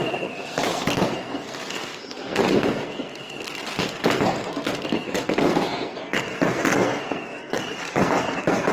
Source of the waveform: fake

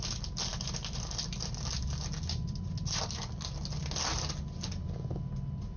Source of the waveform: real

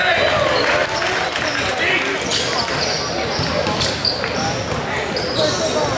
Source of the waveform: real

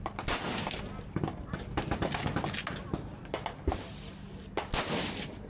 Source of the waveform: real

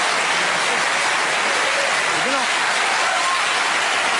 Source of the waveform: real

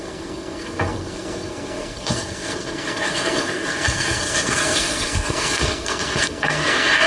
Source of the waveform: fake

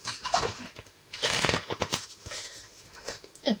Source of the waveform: fake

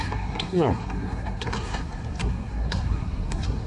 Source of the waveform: fake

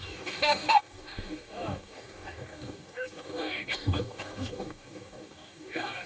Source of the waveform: fake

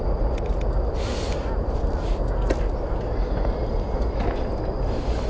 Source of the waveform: real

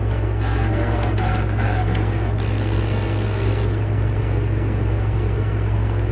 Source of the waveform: fake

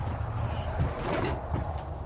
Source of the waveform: real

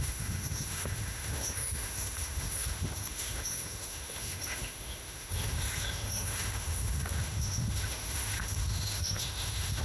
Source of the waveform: fake